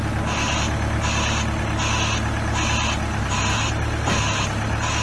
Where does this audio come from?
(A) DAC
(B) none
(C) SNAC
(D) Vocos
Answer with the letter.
B